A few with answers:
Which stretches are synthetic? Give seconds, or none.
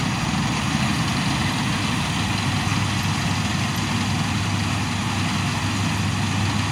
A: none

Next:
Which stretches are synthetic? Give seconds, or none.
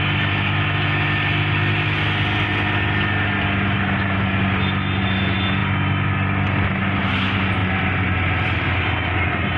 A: none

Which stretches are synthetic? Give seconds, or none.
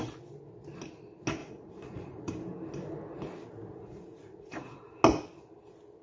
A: 1.4-2.3 (vocoder, Vocos); 3.7-4.8